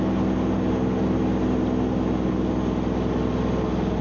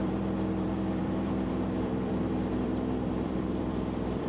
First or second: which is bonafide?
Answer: first